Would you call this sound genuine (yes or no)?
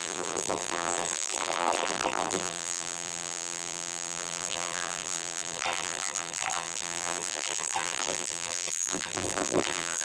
no